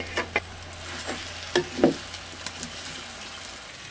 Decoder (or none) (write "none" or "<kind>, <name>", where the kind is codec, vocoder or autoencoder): none